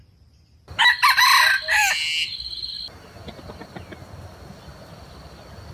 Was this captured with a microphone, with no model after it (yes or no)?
yes